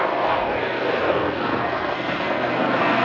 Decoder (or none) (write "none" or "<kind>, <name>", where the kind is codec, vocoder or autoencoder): codec, SNAC